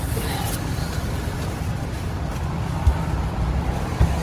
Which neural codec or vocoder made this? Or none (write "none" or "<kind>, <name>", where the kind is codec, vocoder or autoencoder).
vocoder, BigVGAN v2